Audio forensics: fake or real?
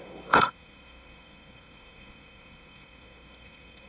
fake